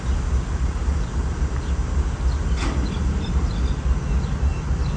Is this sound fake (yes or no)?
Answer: no